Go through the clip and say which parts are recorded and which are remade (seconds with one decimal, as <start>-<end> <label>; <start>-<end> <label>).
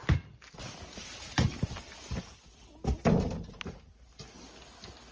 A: 0.0-0.6 recorded; 0.6-3.5 remade; 3.5-5.1 recorded